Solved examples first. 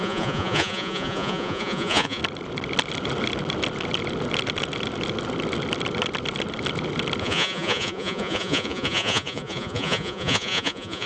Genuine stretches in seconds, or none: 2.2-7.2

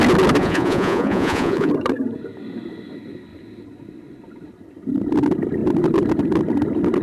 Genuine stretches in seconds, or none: 0.0-0.4; 1.7-7.0

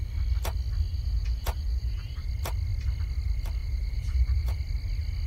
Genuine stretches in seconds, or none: 0.0-0.9; 2.3-3.6; 4.6-5.3

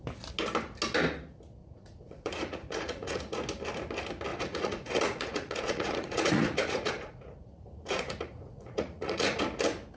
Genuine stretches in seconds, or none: 0.0-1.6; 3.2-4.3; 9.4-10.0

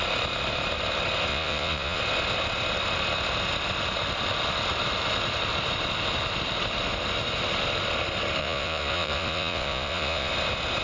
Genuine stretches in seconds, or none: 0.0-1.3; 2.0-8.4; 10.3-10.8

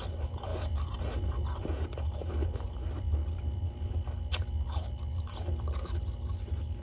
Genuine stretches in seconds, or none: 0.0-6.8

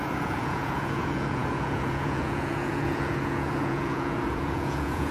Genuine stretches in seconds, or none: none